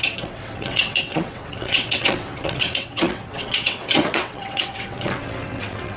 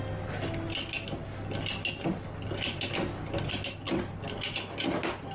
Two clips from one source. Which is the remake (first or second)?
first